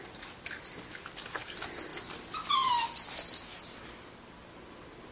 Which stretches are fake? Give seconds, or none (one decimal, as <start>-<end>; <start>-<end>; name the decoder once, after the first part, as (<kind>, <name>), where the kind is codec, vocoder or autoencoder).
none